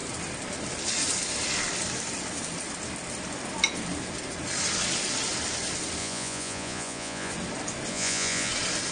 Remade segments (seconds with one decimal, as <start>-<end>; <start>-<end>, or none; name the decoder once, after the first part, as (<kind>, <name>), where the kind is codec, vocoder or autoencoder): 6.0-7.3 (vocoder, Vocos); 7.9-8.5